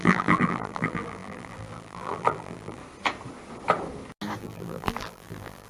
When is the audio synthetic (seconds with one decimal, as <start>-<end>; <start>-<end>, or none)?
0.0-2.8; 4.4-5.7